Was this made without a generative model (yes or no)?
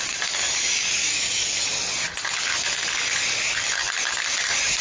yes